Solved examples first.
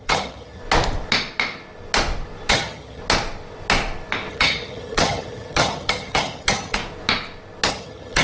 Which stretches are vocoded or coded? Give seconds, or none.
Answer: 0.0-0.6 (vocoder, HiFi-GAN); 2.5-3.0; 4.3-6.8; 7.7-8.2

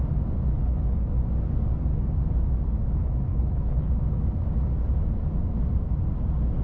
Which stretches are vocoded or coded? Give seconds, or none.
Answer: 0.6-1.1 (codec, HILCodec); 3.3-3.9

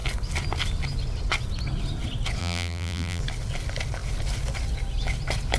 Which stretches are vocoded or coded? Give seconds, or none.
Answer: 2.4-3.2 (vocoder, BigVGAN v2)

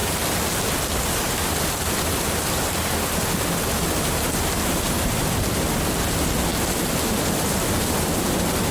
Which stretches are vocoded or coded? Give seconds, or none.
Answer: none